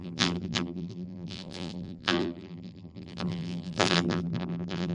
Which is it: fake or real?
fake